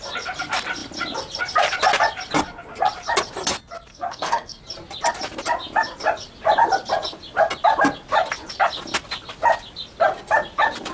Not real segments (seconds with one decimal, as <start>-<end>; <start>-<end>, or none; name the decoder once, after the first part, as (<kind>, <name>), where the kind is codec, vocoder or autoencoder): 3.9-4.6 (codec, SNAC)